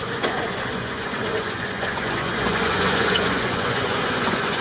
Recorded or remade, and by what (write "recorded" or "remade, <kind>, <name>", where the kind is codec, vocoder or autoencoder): remade, vocoder, Vocos